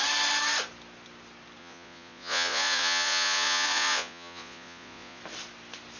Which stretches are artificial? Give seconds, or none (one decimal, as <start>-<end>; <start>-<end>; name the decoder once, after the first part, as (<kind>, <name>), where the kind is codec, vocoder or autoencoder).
1.6-5.2 (vocoder, Vocos)

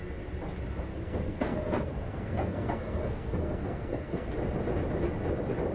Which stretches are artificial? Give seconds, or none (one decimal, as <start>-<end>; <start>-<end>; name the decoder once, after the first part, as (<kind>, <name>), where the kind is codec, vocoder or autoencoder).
0.9-4.3 (codec, SNAC)